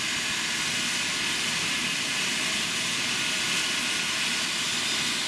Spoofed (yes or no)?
no